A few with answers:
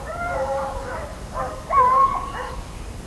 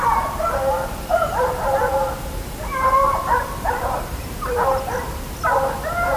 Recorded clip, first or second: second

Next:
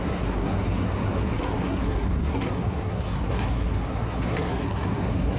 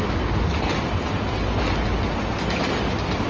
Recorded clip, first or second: second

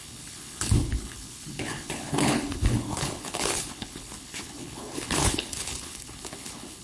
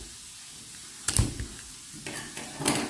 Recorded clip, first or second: second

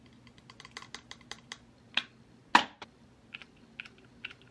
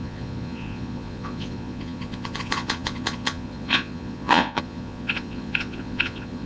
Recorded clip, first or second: first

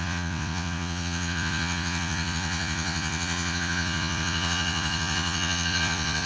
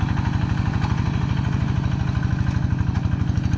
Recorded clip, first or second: second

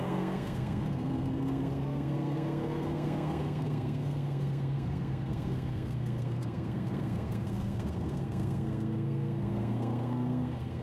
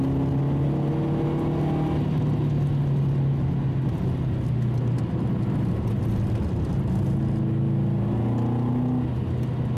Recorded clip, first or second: second